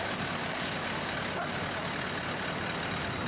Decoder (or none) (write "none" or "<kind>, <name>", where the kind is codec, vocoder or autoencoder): none